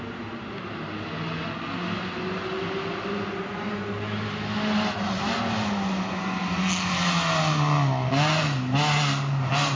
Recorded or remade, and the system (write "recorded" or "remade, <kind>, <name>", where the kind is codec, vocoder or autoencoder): recorded